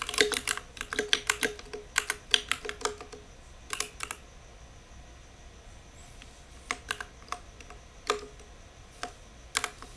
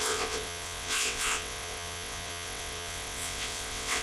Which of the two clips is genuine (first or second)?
first